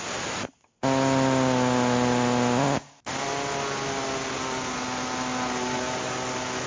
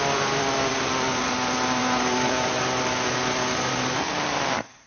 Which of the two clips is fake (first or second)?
second